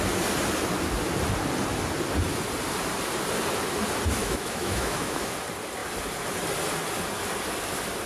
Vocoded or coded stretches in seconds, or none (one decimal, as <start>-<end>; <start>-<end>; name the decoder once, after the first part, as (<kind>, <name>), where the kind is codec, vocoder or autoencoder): 4.2-5.3 (autoencoder, DAC-VAE)